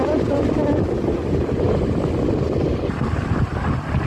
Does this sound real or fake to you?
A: real